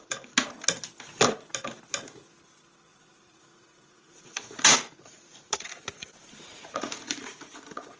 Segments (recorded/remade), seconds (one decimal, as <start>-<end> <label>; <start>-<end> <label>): 0.0-2.9 recorded; 2.9-8.0 remade